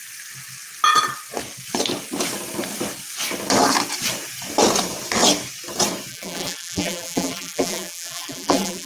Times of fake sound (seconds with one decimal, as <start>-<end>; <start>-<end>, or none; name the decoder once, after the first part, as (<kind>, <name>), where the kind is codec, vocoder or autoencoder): 6.1-8.9 (vocoder, BigVGAN v2)